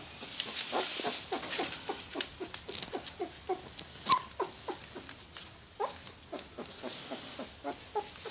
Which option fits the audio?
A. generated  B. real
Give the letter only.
B